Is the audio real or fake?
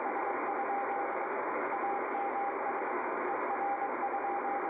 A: real